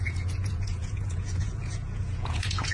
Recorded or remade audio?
remade